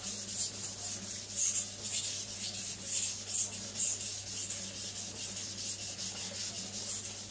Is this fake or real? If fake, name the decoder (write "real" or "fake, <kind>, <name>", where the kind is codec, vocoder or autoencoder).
real